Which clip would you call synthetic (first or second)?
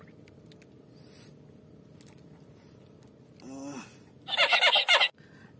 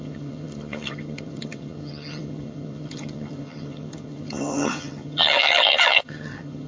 second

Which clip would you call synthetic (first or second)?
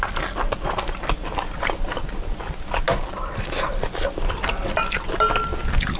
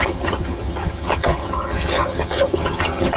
second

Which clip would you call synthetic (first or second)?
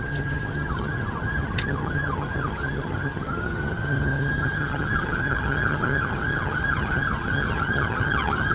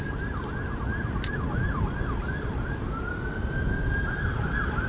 first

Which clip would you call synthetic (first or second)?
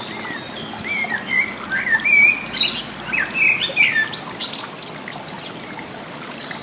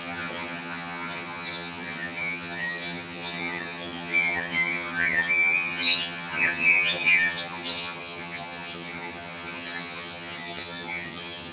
second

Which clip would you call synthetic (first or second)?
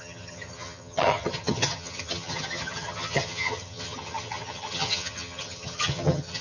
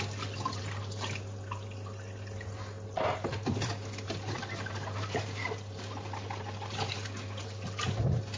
first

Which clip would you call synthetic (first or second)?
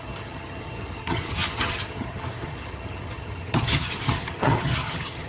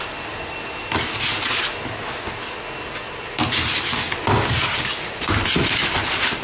first